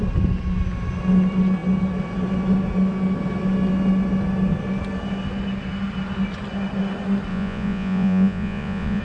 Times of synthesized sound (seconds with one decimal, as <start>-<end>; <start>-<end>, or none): 7.3-9.0